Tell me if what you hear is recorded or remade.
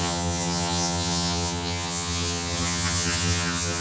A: remade